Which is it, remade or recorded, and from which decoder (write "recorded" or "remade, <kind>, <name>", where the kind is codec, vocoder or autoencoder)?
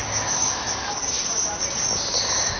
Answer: recorded